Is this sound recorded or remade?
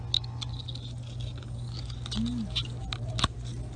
recorded